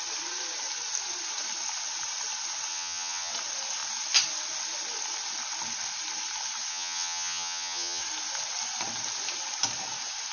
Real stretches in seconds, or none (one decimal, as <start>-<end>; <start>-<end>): 0.0-2.7; 3.3-6.7; 8.0-10.3